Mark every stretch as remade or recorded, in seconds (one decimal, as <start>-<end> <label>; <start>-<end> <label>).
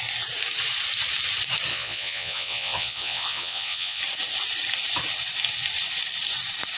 0.0-1.7 recorded; 1.7-4.0 remade; 4.0-6.8 recorded